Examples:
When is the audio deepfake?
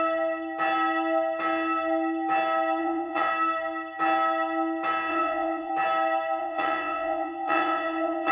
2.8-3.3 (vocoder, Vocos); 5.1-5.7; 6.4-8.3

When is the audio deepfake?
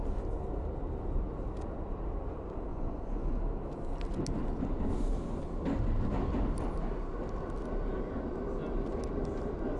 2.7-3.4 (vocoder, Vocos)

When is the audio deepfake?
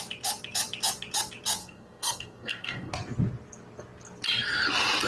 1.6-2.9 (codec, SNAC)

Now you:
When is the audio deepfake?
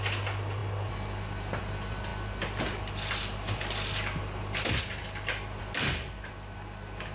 none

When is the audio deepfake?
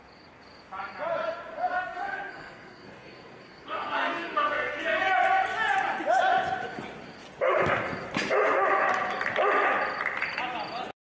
1.5-5.0 (codec, SNAC)